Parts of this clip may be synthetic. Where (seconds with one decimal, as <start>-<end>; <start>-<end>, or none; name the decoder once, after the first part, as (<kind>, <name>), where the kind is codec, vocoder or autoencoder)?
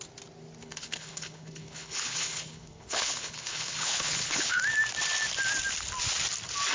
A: 0.6-4.6 (codec, HILCodec)